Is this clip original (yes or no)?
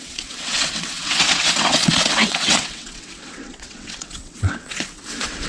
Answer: no